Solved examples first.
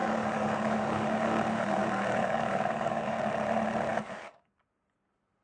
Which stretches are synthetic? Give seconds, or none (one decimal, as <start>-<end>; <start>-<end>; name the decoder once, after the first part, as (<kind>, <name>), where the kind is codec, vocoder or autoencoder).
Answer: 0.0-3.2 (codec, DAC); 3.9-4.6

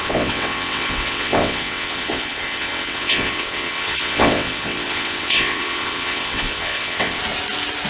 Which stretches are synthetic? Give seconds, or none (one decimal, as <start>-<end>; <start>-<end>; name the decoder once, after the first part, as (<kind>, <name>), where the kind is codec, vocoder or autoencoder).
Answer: 0.0-7.2 (vocoder, WaveNeXt)

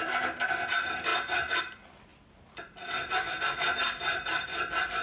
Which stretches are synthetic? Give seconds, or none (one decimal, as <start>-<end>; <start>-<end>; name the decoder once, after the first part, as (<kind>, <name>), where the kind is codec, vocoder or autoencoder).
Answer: 0.0-1.1 (vocoder, BigVGAN v2); 1.6-5.0

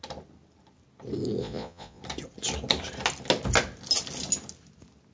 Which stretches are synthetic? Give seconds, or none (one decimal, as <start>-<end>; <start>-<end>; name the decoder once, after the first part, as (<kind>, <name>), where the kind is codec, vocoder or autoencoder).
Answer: 1.4-2.0 (vocoder, Vocos)